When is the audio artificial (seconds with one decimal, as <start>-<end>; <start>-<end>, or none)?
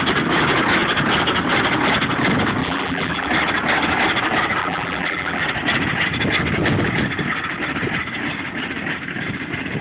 2.6-3.3; 4.6-5.4